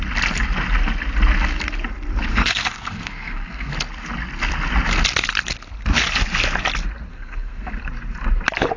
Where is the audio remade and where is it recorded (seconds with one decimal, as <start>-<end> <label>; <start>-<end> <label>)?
0.0-2.3 recorded; 2.3-3.7 remade; 3.7-7.1 recorded; 7.1-7.7 remade; 7.7-8.8 recorded